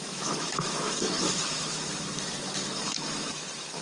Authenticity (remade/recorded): remade